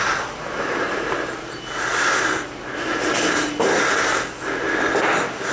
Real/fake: real